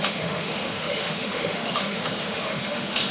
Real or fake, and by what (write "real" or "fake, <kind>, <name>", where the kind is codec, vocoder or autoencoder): fake, autoencoder, DAC-VAE